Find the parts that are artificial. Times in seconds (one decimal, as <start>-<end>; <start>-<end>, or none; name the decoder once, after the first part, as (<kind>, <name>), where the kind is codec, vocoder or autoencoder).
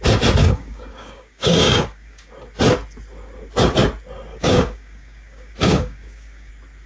0.4-2.3 (codec, DAC); 4.3-6.5